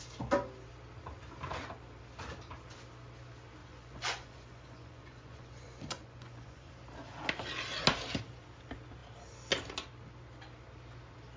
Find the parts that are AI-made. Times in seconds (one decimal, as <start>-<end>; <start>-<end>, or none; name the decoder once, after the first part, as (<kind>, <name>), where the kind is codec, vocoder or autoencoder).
3.6-6.7 (vocoder, Vocos)